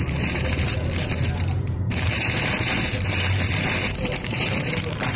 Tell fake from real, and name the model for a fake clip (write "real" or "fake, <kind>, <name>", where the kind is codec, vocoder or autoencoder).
fake, vocoder, BigVGAN v2